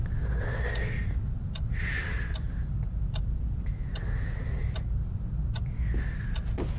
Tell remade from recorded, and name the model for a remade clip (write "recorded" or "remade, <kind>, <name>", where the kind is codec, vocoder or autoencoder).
recorded